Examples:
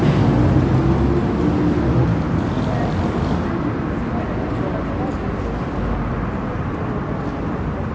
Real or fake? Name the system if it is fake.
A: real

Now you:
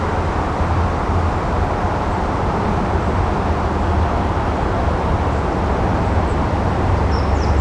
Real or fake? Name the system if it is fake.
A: real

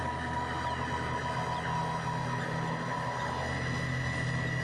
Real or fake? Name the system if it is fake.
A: real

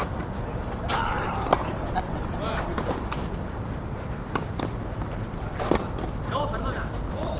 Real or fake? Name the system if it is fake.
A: fake, vocoder, BigVGAN v2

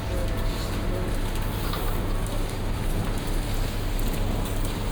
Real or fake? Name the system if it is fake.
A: real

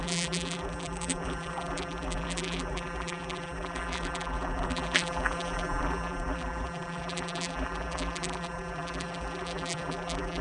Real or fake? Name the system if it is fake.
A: fake, vocoder, BigVGAN v2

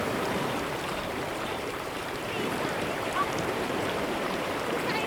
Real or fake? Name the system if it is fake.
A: fake, vocoder, BigVGAN v2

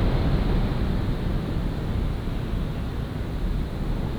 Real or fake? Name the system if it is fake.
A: real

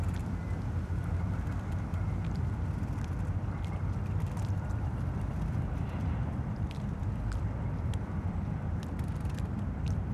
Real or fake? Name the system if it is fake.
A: fake, vocoder, BigVGAN v2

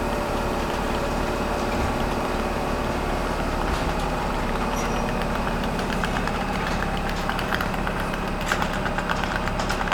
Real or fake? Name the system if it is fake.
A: fake, vocoder, BigVGAN v2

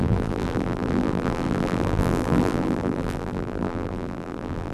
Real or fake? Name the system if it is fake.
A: fake, vocoder, BigVGAN v2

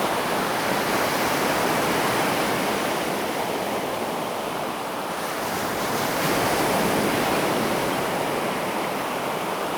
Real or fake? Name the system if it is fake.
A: fake, vocoder, BigVGAN v2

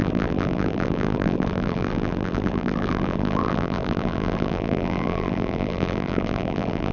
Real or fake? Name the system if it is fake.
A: fake, vocoder, BigVGAN v2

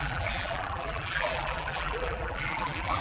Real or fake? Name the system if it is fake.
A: fake, vocoder, BigVGAN v2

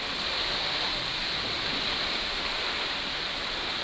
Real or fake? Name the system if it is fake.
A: fake, vocoder, BigVGAN v2